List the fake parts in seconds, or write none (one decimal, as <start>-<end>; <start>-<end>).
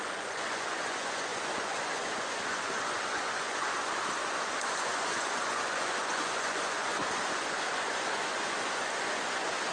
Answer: 0.0-9.7